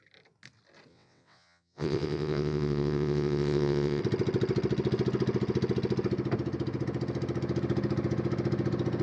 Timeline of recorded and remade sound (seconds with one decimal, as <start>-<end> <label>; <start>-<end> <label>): 0.0-0.9 recorded; 0.9-4.0 remade; 4.0-9.0 recorded